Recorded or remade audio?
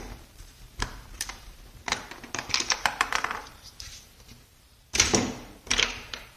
remade